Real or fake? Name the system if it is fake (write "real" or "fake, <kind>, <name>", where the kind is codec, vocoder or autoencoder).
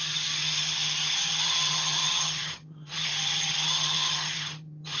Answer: fake, vocoder, HiFi-GAN